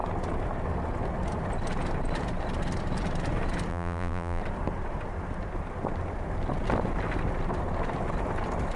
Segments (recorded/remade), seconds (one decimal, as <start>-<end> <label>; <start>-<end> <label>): 0.0-3.7 recorded; 3.7-4.4 remade; 4.4-8.8 recorded